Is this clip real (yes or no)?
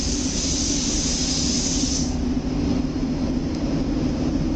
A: yes